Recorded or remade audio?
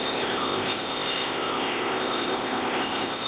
remade